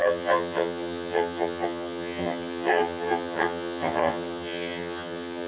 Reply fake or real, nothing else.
fake